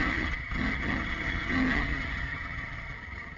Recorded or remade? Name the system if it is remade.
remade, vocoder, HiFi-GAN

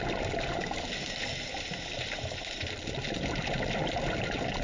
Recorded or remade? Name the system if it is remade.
recorded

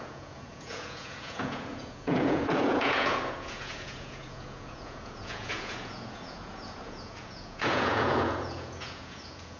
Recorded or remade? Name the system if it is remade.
remade, vocoder, Vocos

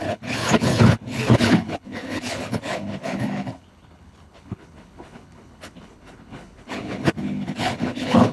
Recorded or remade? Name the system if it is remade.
remade, codec, HILCodec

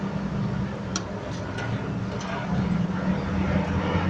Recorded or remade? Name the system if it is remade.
recorded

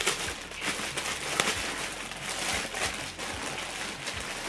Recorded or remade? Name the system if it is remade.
recorded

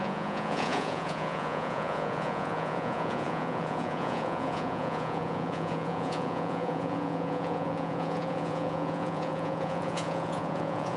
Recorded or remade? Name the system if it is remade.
remade, vocoder, Vocos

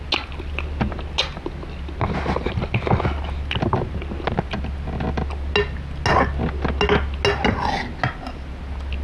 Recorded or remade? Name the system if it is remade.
recorded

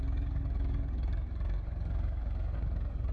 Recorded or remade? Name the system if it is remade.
remade, codec, DAC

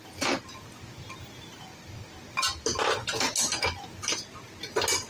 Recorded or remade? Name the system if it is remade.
recorded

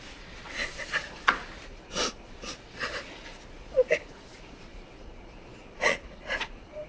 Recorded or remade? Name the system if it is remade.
remade, vocoder, Vocos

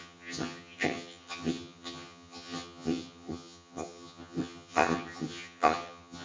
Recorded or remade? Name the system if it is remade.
remade, vocoder, HiFi-GAN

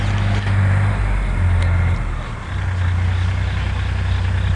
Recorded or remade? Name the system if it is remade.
recorded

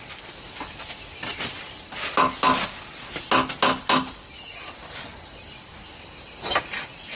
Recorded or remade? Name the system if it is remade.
recorded